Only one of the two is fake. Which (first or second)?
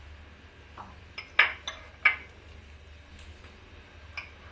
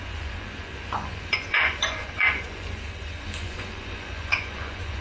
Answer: second